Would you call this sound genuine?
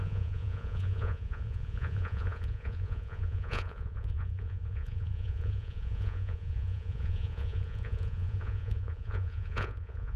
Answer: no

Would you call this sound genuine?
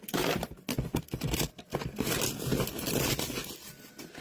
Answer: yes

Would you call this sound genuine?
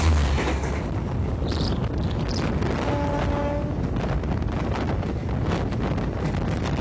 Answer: yes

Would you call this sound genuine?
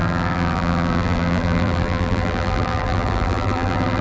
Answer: no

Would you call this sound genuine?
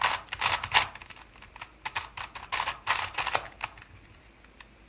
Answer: yes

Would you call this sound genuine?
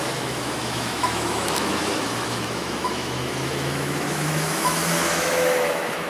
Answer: no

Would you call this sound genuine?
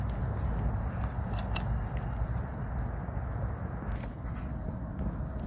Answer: yes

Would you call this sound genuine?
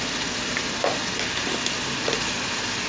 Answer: yes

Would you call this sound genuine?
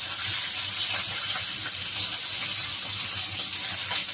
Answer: yes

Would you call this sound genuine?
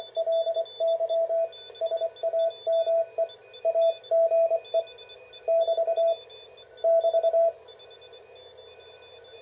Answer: yes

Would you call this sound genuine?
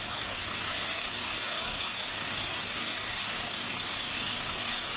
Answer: no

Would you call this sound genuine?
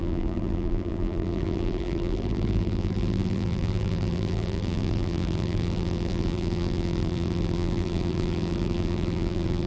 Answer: no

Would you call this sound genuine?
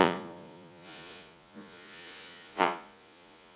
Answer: no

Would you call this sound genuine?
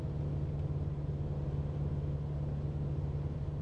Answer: yes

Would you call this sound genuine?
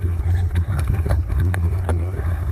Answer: no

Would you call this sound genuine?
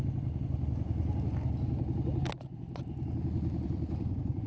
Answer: yes